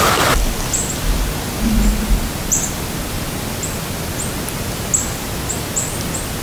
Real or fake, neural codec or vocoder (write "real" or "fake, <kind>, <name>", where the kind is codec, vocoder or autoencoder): real